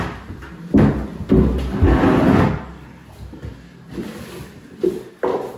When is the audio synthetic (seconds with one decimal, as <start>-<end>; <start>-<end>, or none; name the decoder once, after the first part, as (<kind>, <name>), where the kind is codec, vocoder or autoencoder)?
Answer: none

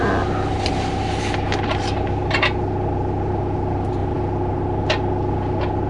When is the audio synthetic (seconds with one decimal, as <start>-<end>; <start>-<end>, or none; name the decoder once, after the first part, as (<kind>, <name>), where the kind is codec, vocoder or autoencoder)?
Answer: none

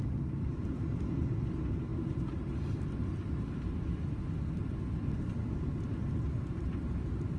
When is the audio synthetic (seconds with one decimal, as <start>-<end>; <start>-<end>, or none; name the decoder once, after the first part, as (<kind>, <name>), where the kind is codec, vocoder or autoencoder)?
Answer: 0.0-0.9 (vocoder, BigVGAN v2)

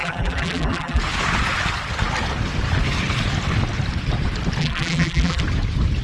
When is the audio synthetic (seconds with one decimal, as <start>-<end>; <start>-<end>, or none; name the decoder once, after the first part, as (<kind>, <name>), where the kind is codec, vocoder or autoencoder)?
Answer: 0.0-1.0 (vocoder, BigVGAN v2); 4.6-5.4